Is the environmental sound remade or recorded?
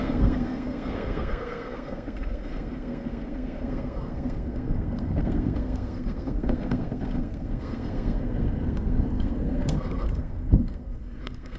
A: remade